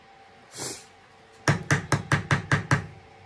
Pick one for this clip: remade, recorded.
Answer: recorded